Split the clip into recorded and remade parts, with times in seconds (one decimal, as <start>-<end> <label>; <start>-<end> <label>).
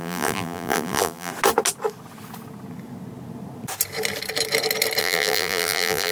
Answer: 0.0-1.3 remade; 1.3-5.0 recorded; 5.0-6.1 remade